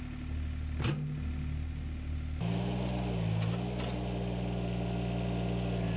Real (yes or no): yes